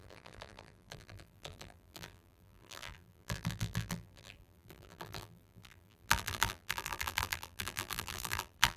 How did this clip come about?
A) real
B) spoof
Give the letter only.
B